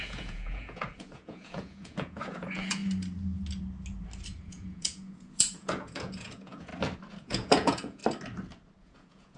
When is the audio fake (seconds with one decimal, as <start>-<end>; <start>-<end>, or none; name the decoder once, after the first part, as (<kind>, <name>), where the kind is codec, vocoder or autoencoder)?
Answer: 0.0-2.8 (vocoder, Vocos); 4.4-6.7; 7.2-8.0; 8.8-9.4